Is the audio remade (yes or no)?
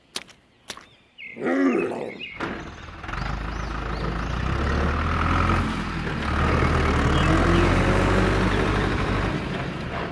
no